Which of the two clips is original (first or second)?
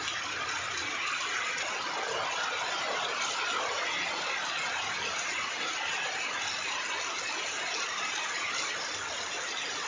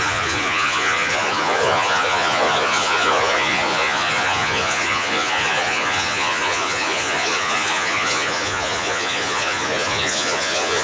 first